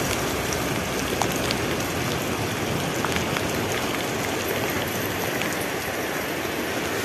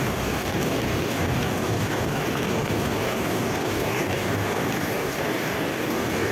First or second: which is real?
first